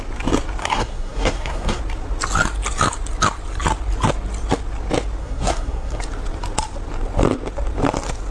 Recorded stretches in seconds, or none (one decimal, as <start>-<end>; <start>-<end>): 0.0-0.6; 1.8-5.2; 6.0-8.3